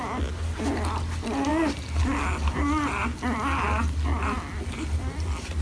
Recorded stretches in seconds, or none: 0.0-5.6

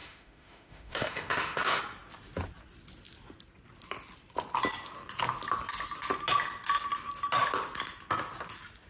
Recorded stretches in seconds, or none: 1.8-8.9